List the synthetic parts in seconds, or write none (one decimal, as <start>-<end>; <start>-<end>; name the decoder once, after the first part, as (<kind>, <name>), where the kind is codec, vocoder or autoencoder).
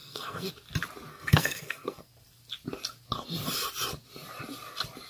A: 0.0-0.5 (codec, SNAC); 1.1-2.1